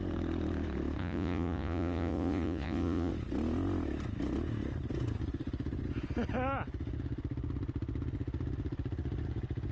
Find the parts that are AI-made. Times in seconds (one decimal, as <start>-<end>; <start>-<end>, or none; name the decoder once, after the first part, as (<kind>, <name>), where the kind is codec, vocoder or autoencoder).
1.0-3.1 (vocoder, Vocos)